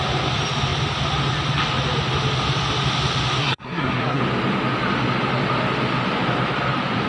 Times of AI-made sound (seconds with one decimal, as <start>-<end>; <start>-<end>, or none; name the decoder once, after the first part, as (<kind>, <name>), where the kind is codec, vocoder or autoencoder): 3.4-4.2 (codec, SNAC)